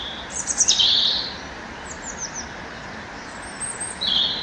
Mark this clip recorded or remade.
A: recorded